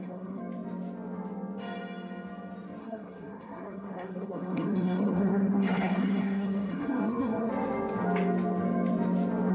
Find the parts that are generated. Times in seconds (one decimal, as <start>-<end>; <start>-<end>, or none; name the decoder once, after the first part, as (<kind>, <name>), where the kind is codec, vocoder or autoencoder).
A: 0.0-0.4 (codec, SNAC); 2.8-7.5